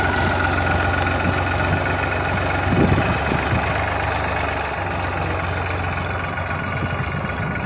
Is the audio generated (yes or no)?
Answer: no